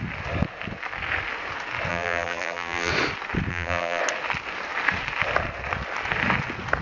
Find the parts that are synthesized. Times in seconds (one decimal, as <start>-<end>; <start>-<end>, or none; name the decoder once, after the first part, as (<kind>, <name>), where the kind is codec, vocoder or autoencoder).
1.9-2.9 (vocoder, BigVGAN v2); 3.5-4.0